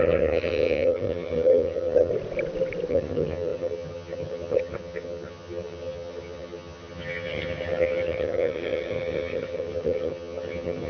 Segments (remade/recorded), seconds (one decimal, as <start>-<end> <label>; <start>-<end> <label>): 0.0-2.1 remade; 2.1-2.9 recorded; 2.9-10.9 remade